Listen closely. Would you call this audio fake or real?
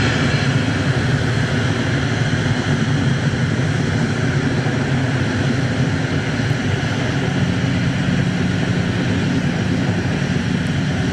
real